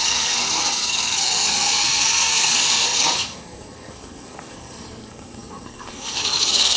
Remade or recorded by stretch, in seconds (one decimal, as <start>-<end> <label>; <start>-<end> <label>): 0.0-6.8 remade